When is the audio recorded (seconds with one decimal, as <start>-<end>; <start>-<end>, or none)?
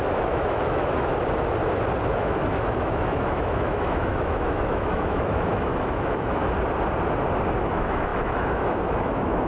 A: 1.1-2.2; 6.4-7.6